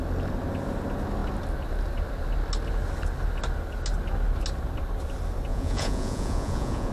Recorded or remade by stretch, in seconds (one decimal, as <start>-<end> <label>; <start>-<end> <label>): 0.0-5.5 recorded; 5.5-6.9 remade